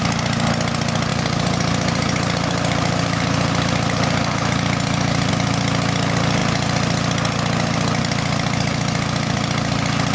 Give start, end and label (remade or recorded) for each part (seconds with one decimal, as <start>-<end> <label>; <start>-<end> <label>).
0.0-1.1 recorded; 1.1-5.3 remade; 5.3-10.1 recorded